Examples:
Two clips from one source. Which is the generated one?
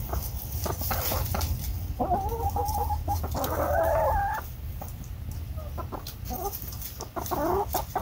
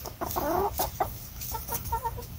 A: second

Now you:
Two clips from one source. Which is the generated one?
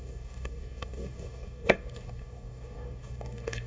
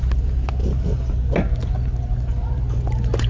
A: first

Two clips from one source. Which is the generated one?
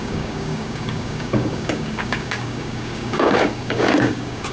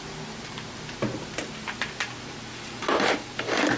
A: first